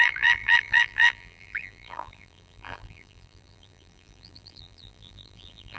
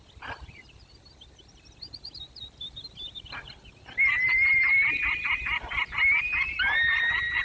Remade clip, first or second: first